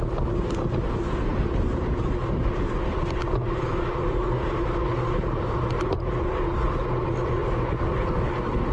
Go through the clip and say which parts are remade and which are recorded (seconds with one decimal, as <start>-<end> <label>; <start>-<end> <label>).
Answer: 0.0-8.7 recorded